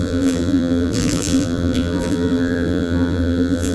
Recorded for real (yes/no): no